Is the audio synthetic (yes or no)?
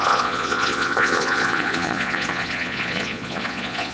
yes